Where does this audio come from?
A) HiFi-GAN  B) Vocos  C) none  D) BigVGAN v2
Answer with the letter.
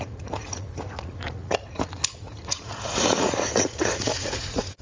B